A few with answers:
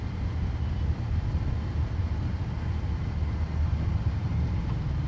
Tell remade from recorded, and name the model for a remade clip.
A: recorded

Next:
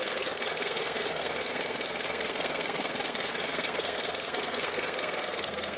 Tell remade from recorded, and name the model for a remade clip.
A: remade, codec, SNAC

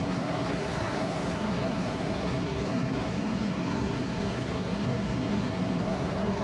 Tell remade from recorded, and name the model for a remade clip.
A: remade, codec, SNAC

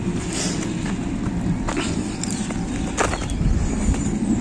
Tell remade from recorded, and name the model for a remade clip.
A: recorded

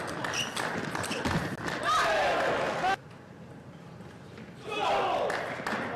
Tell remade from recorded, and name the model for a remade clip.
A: recorded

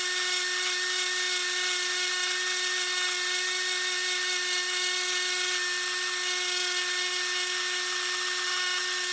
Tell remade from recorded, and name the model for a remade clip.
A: recorded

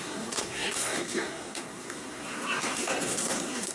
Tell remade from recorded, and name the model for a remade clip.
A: remade, codec, SNAC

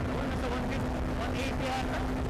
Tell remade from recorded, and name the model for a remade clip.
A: recorded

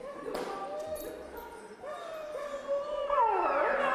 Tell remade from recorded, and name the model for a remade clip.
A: recorded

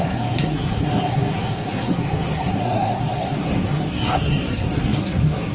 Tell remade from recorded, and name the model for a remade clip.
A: remade, codec, SNAC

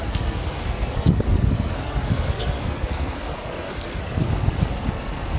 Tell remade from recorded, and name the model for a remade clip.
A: remade, codec, SNAC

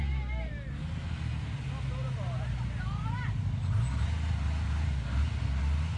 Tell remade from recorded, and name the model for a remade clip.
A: recorded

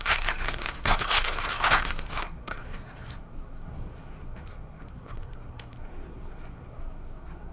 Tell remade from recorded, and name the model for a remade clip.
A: remade, codec, SNAC